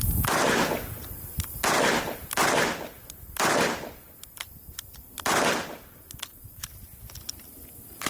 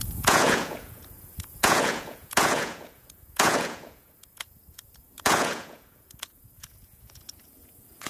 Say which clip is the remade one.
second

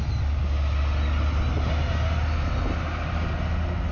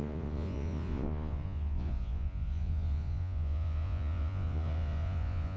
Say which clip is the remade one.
second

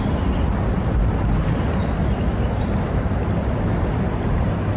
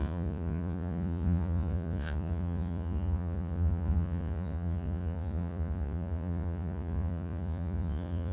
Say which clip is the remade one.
second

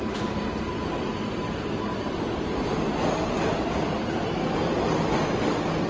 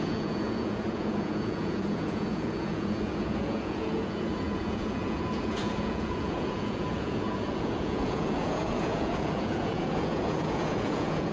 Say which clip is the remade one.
second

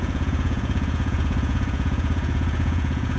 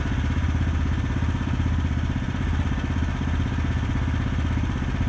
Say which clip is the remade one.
first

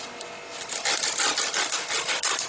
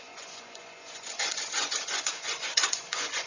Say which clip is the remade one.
second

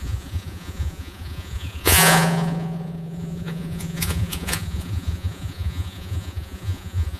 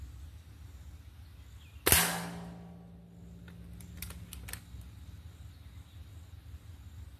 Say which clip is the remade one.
first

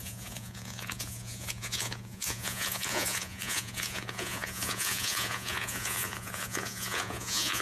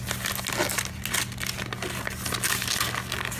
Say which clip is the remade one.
first